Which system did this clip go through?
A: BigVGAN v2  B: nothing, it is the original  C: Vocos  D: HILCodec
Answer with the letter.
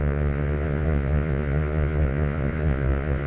C